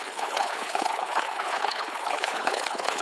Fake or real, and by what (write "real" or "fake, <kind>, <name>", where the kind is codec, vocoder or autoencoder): fake, codec, HILCodec